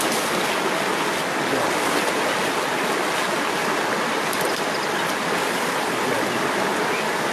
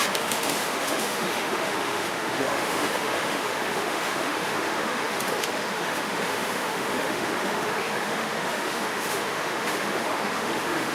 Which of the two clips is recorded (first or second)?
first